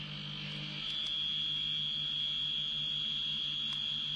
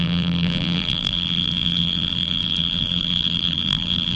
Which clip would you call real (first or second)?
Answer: first